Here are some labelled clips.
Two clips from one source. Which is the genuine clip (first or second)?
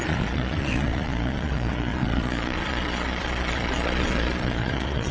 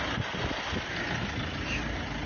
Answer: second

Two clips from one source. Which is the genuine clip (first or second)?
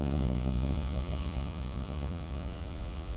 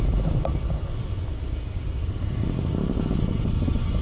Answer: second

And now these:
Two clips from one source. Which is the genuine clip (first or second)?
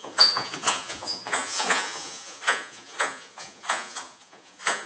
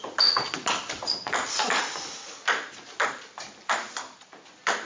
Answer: second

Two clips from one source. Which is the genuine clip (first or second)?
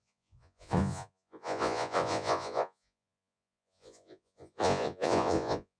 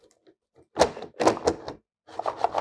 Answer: second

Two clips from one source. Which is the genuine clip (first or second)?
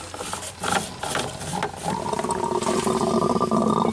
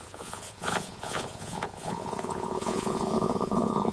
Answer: first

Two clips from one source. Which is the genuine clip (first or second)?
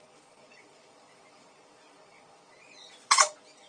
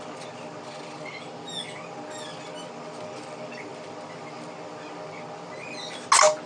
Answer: second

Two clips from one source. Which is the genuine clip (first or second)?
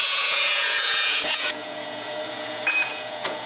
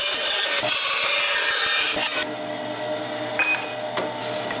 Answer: second